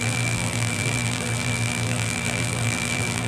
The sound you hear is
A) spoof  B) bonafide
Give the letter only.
A